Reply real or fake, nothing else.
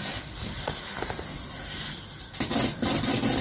real